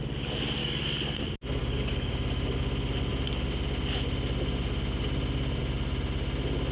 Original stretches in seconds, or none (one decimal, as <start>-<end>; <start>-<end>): 0.0-0.6; 1.2-1.6; 2.1-6.7